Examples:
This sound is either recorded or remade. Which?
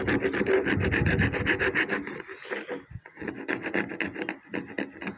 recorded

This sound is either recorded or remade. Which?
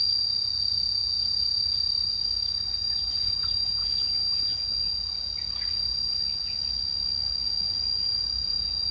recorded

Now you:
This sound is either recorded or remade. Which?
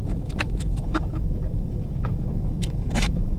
remade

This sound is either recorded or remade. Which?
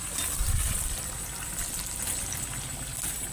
remade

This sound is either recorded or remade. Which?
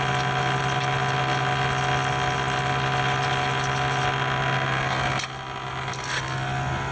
recorded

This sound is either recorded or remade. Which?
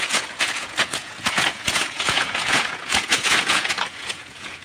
remade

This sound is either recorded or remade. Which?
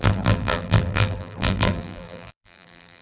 remade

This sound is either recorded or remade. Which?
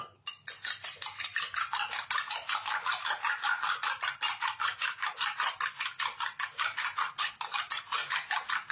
recorded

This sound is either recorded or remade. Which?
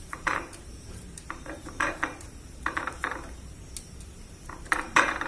remade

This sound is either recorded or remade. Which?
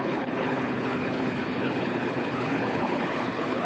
remade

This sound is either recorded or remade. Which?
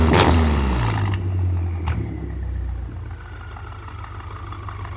recorded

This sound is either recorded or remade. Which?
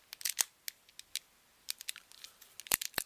recorded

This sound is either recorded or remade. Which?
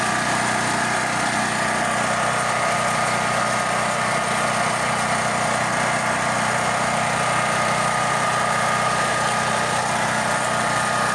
recorded